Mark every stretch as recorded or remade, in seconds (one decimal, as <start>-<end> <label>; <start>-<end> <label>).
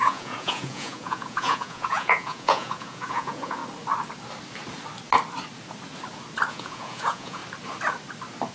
0.0-3.6 remade; 3.6-6.5 recorded; 6.5-7.4 remade; 7.4-8.5 recorded